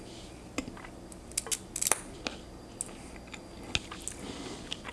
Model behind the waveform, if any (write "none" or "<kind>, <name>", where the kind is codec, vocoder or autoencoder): none